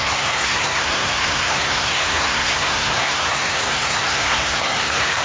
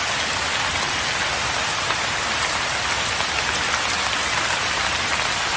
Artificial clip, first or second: first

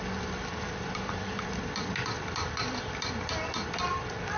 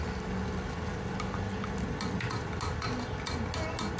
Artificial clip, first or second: first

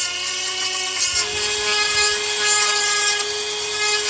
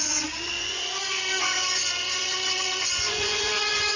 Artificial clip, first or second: second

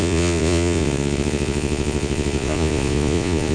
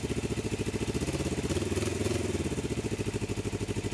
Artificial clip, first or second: first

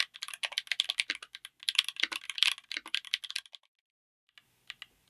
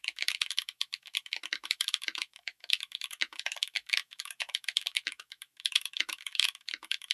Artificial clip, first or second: second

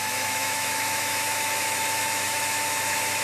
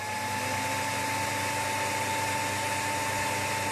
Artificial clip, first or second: first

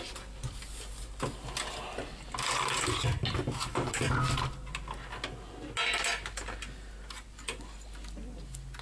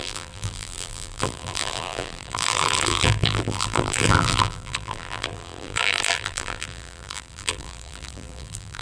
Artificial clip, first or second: second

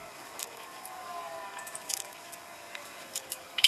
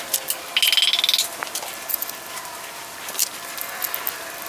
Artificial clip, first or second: first